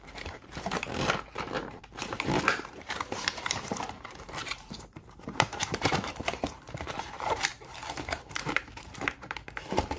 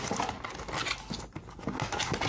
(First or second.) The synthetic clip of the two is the first